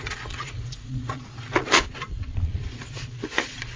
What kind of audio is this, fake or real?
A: fake